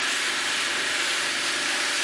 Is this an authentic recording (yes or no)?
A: yes